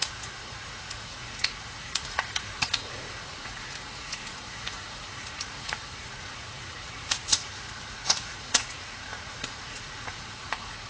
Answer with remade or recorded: remade